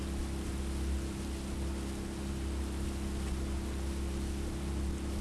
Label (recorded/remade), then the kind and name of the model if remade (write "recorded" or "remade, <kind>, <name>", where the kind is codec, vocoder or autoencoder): recorded